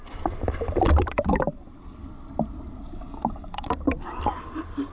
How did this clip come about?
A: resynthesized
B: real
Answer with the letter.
A